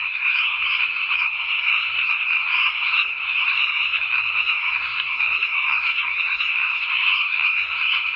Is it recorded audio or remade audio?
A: remade